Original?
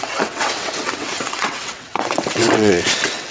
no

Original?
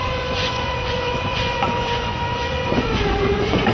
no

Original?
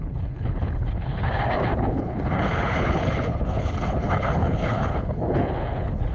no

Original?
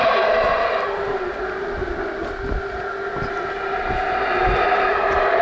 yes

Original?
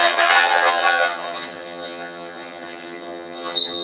no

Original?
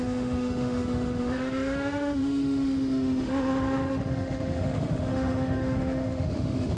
no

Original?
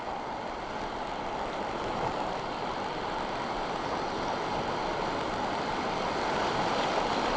yes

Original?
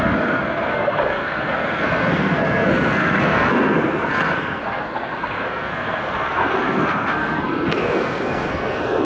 no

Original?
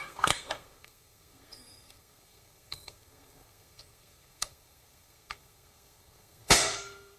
no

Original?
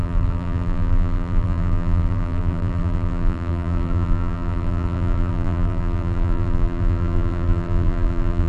no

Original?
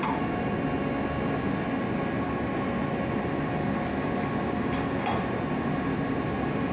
yes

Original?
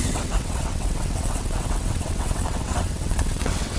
no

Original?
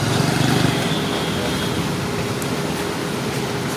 yes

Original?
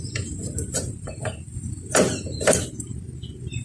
no